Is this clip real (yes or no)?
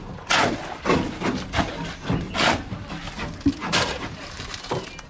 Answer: yes